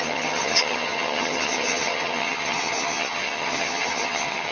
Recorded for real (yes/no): no